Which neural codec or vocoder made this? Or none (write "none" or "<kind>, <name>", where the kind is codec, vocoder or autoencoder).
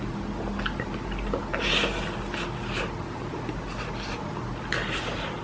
none